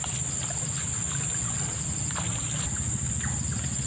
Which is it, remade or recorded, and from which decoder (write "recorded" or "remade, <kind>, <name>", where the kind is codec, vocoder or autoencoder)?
recorded